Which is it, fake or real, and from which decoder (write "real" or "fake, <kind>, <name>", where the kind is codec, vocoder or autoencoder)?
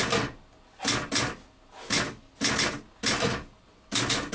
real